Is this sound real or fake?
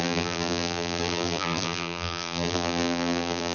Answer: fake